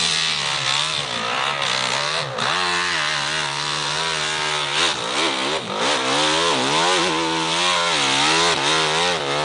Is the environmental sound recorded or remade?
recorded